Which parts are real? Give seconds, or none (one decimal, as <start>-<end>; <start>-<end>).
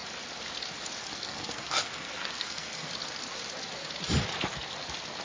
0.0-1.0; 2.9-5.2